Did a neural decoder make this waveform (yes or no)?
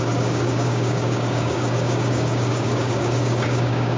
yes